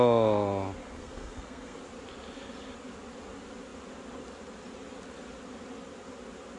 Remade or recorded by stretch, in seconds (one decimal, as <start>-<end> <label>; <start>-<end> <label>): 0.0-0.8 recorded; 0.8-1.8 remade; 1.8-6.6 recorded